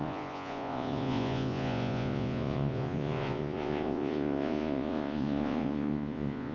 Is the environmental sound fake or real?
fake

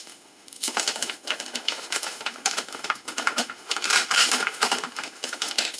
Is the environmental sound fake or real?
fake